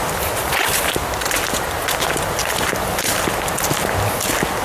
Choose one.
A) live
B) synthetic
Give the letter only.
A